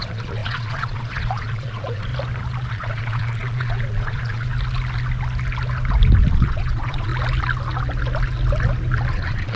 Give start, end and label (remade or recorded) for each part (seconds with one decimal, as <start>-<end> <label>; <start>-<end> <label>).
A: 0.0-2.1 remade; 2.1-2.7 recorded; 2.7-4.5 remade; 4.5-6.3 recorded; 6.3-7.1 remade; 7.1-9.1 recorded; 9.1-9.6 remade